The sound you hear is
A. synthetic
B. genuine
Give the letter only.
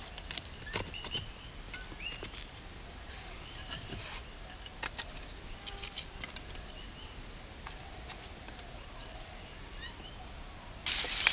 B